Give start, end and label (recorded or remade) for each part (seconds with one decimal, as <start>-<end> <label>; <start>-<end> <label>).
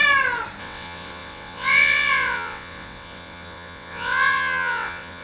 0.0-0.6 recorded; 0.6-5.2 remade